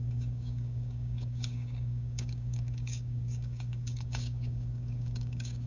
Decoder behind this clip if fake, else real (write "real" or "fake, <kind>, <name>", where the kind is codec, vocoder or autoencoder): fake, codec, DAC